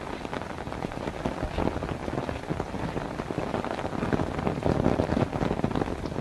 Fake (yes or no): no